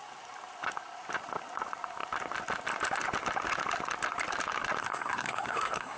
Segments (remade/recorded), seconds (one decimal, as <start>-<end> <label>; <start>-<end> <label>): 0.0-4.8 recorded; 4.8-6.0 remade